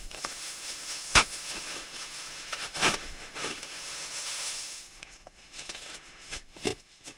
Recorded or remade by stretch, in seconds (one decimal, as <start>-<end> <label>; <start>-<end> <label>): 0.0-7.2 remade